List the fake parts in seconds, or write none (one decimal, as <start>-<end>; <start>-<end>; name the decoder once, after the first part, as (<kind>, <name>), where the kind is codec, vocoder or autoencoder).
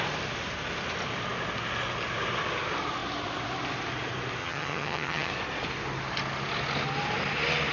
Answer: 4.4-5.3 (vocoder, HiFi-GAN)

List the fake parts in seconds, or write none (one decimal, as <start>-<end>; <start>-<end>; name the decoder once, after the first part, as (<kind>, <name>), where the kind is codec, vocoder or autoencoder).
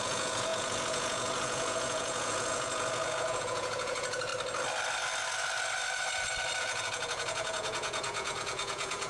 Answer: 0.0-4.3 (vocoder, Vocos); 6.6-9.1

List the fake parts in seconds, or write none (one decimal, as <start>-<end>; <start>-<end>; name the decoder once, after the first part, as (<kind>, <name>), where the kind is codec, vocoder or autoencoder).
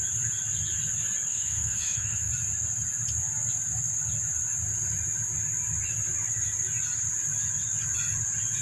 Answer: 1.3-2.3 (autoencoder, DAC-VAE)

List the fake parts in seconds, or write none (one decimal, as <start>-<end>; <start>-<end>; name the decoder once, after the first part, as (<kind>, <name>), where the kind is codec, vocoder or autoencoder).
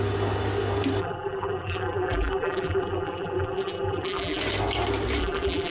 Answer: 1.0-4.4 (vocoder, BigVGAN v2); 5.2-5.7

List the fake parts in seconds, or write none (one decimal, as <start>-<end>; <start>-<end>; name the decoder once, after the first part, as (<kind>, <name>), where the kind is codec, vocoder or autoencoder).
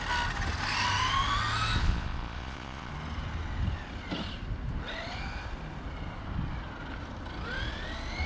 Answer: 1.8-2.9 (vocoder, Vocos)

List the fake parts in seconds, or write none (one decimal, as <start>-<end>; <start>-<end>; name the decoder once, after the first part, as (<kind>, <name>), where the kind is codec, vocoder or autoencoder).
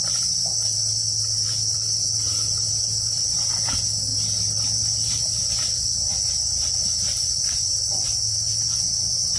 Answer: none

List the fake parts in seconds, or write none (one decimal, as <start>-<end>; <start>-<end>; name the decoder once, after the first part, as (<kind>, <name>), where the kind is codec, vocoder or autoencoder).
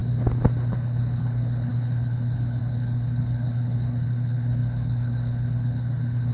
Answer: 0.7-6.3 (codec, HILCodec)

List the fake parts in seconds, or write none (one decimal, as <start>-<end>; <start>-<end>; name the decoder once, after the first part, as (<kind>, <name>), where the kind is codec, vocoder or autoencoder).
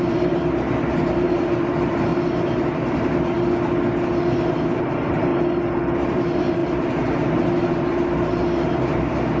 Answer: 0.0-2.1 (vocoder, BigVGAN v2); 4.8-5.3; 5.9-6.6; 7.7-9.4